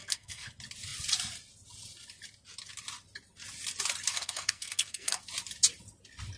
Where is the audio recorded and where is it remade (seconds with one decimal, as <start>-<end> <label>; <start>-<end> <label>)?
0.0-0.5 remade; 0.5-4.1 recorded; 4.1-5.2 remade; 5.2-6.4 recorded